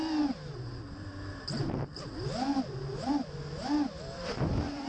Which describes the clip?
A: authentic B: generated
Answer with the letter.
A